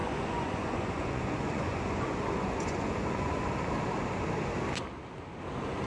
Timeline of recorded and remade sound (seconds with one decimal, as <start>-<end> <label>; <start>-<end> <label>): 0.0-3.5 remade; 3.5-5.9 recorded